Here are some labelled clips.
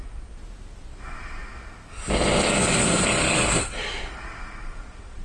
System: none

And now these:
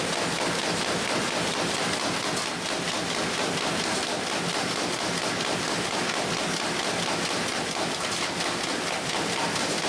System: none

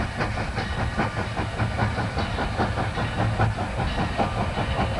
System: none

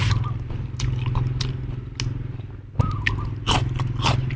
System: none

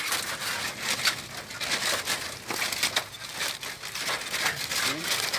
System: none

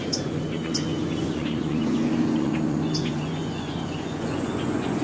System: vocoder, Vocos